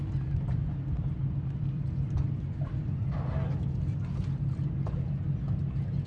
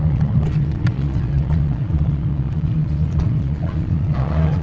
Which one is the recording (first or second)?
first